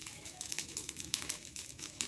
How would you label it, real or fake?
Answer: fake